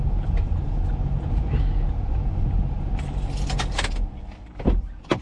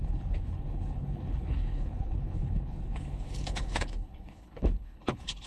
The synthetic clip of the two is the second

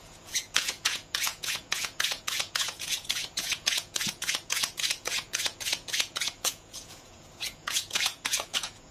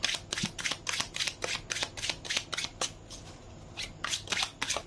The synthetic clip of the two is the first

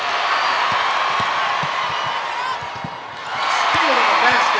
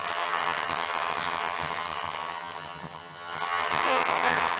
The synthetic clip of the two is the second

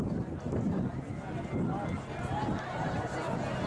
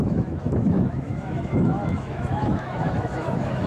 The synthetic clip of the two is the second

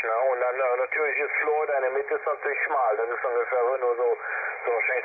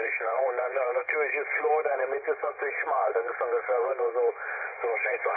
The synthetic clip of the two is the second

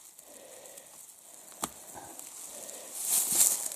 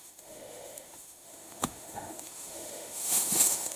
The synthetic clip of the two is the second